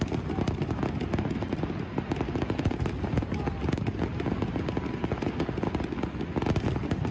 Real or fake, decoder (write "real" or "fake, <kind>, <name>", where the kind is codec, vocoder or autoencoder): real